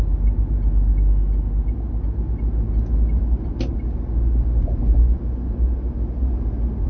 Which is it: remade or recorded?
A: recorded